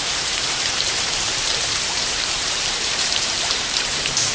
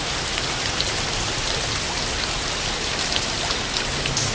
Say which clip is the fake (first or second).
first